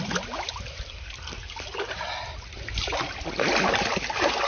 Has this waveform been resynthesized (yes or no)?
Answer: no